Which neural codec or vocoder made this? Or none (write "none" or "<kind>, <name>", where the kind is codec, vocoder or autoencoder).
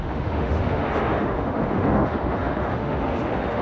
autoencoder, DAC-VAE